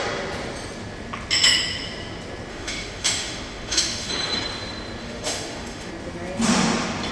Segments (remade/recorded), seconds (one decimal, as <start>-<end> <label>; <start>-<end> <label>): 0.0-2.5 recorded; 2.5-4.1 remade; 4.1-5.0 recorded; 5.0-5.9 remade; 5.9-7.1 recorded